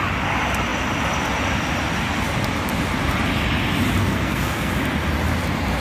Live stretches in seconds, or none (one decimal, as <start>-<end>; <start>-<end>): 0.0-4.0; 4.7-5.8